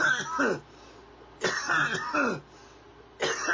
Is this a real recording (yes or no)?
yes